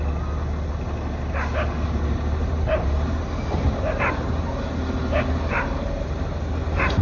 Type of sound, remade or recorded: recorded